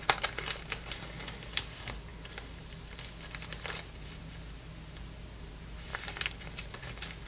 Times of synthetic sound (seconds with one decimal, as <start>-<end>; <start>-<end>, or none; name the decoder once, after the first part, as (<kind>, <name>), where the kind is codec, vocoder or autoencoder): none